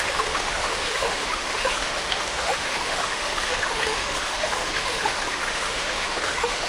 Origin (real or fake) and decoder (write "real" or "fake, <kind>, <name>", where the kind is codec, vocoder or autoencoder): fake, autoencoder, DAC-VAE